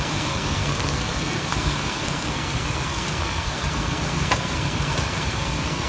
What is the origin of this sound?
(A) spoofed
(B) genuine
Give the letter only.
A